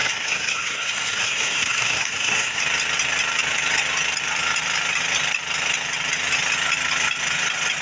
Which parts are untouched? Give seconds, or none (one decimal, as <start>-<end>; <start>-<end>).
2.6-7.8